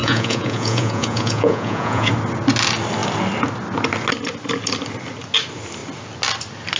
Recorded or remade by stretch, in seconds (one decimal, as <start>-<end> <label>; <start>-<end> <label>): 0.0-2.1 remade; 2.1-6.8 recorded